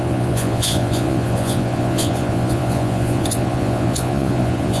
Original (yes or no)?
no